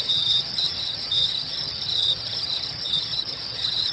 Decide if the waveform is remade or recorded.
remade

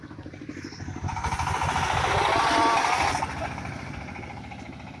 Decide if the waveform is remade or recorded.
recorded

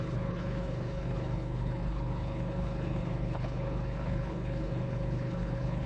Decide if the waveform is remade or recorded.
remade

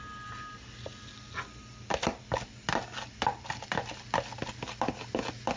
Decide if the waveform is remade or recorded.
recorded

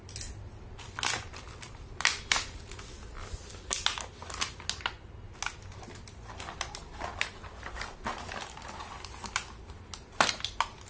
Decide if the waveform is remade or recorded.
recorded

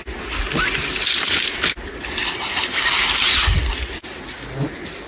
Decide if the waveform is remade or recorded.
recorded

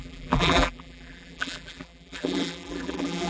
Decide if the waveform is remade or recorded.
remade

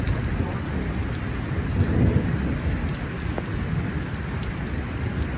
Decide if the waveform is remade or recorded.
recorded